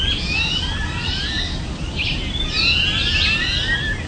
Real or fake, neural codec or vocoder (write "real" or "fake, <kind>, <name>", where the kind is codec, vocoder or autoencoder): real